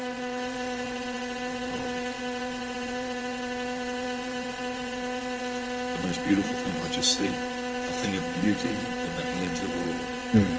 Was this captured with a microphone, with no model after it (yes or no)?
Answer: no